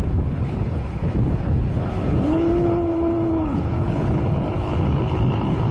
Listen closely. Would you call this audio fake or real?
fake